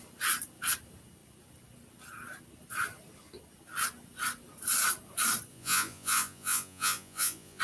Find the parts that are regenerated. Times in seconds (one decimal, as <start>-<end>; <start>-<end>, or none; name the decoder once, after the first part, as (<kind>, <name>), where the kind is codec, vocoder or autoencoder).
5.5-7.6 (vocoder, Vocos)